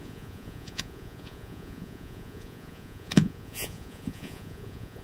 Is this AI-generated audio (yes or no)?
yes